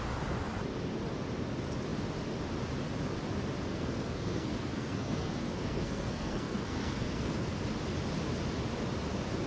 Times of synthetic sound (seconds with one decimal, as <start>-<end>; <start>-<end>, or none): 3.7-7.6